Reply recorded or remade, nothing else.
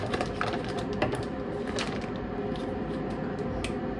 recorded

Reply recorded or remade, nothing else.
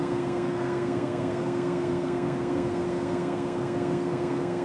remade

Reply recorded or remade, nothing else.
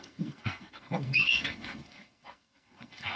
remade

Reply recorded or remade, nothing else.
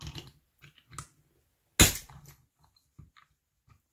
recorded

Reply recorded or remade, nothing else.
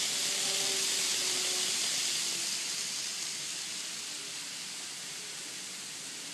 recorded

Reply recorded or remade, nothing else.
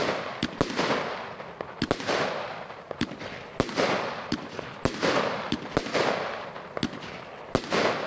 recorded